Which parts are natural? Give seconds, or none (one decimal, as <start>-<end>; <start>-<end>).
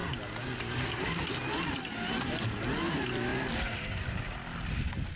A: 0.0-5.2